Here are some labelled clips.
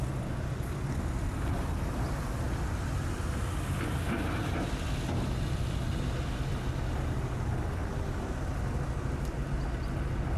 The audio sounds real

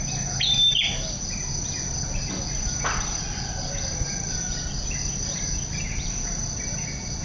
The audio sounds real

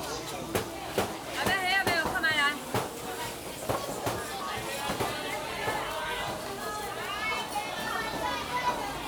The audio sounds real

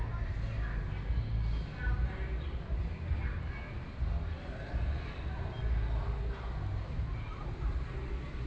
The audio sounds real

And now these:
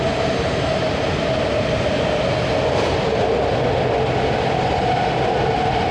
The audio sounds real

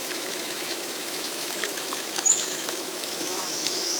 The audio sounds fake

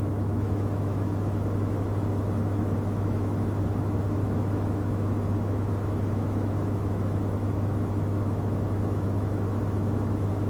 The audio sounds fake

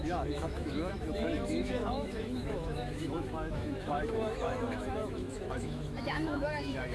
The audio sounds fake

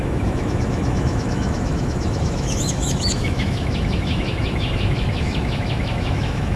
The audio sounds fake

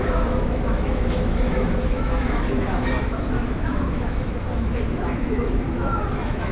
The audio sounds fake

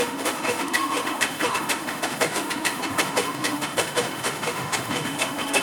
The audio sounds fake